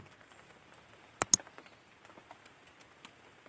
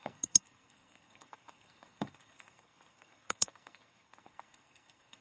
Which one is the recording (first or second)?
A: first